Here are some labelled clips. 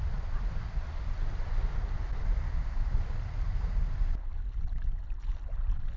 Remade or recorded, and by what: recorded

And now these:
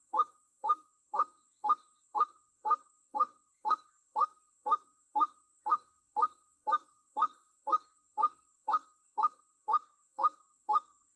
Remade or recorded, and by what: remade, codec, SNAC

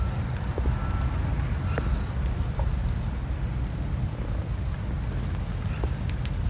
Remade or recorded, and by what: recorded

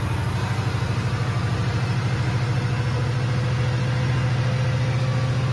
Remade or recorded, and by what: recorded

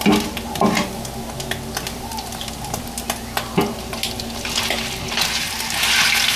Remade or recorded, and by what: recorded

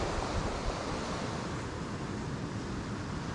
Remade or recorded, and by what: recorded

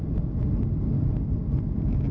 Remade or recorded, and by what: recorded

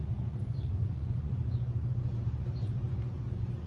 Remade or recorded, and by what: remade, vocoder, Vocos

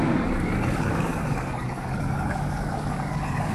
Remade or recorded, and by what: remade, codec, DAC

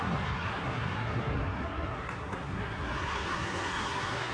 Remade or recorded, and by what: remade, codec, SNAC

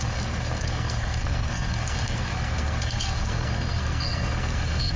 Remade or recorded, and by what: remade, codec, SNAC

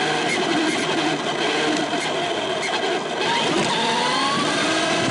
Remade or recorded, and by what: recorded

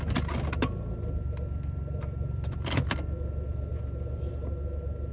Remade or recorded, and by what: recorded